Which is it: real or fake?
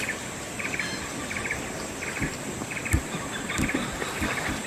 real